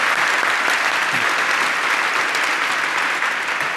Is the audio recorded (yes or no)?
yes